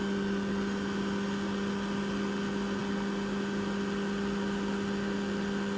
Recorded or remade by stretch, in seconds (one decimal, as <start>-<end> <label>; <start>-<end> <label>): 0.0-5.8 recorded